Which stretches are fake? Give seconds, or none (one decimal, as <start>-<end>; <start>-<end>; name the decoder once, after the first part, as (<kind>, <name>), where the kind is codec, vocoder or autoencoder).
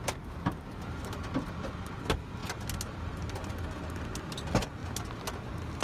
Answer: none